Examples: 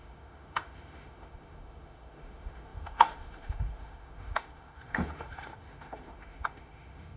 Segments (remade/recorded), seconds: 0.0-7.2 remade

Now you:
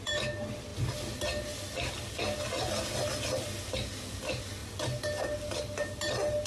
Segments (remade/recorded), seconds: 0.0-6.5 recorded

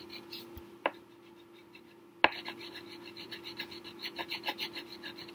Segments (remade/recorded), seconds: 0.0-5.3 recorded

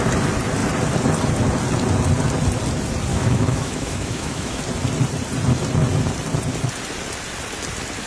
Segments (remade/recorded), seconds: 0.0-3.1 recorded; 3.1-4.6 remade; 4.6-8.1 recorded

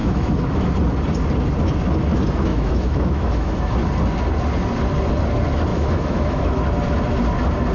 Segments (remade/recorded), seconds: 0.0-0.7 remade; 0.7-2.5 recorded; 2.5-3.6 remade; 3.6-5.7 recorded; 5.7-6.6 remade; 6.6-7.7 recorded

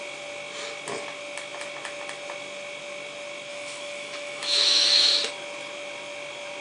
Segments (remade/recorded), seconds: 0.0-3.5 recorded; 3.5-5.3 remade; 5.3-6.6 recorded